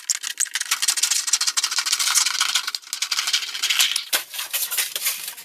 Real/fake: real